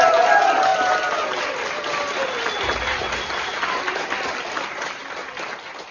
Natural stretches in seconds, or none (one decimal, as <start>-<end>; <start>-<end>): 0.0-5.9